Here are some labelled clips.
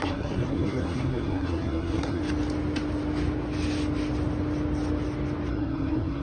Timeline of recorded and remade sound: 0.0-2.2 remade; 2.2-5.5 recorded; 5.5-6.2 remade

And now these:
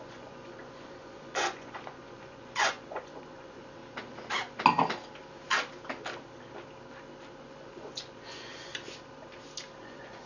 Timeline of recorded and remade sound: 0.0-3.8 remade; 3.8-7.4 recorded; 7.4-8.7 remade; 8.7-9.8 recorded; 9.8-10.3 remade

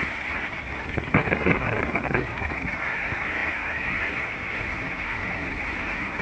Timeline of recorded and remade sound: 0.0-6.2 remade

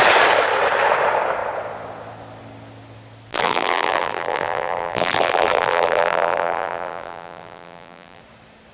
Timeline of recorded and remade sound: 0.0-3.3 recorded; 3.3-8.2 remade; 8.2-8.7 recorded

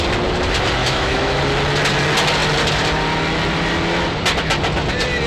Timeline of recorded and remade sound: 0.0-0.8 recorded; 0.8-1.4 remade; 1.4-5.3 recorded